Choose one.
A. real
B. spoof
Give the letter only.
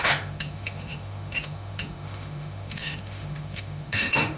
B